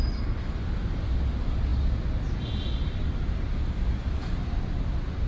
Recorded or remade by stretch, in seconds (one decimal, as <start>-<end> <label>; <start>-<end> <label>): 0.0-5.3 recorded